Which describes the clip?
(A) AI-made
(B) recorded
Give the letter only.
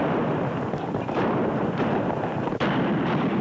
B